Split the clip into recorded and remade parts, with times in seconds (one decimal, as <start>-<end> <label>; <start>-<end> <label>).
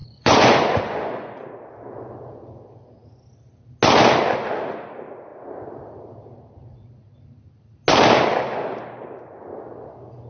0.0-1.5 remade; 1.5-10.3 recorded